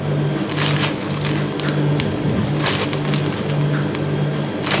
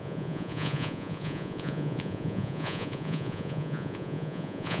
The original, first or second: first